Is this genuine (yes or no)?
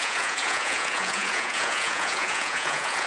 no